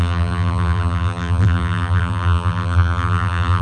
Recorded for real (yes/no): no